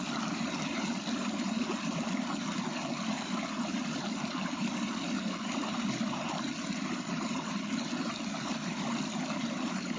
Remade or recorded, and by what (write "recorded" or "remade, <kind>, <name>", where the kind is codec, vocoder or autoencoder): recorded